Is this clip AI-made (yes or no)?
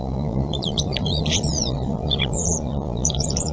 yes